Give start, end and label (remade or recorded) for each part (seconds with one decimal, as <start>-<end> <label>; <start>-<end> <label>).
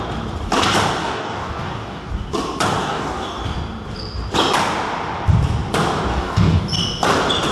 0.0-1.0 recorded; 1.0-2.1 remade; 2.1-2.8 recorded; 2.8-3.4 remade; 3.4-6.1 recorded; 6.1-6.6 remade; 6.6-7.5 recorded